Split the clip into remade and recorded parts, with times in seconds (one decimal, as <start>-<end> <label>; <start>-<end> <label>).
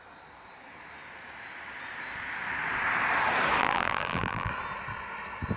0.0-3.6 recorded; 3.6-4.5 remade; 4.5-5.6 recorded